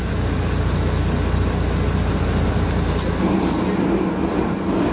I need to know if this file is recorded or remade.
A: recorded